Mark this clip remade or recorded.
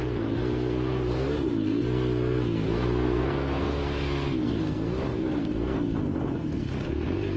remade